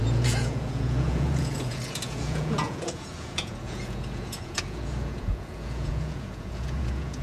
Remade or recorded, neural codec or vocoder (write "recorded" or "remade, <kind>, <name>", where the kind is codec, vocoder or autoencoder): remade, vocoder, Vocos